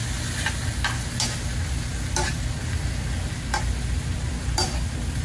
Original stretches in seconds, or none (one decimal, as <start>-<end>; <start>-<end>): 0.0-5.2